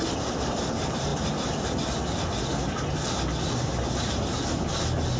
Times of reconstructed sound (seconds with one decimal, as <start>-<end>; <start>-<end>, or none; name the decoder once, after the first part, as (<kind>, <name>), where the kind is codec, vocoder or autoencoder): none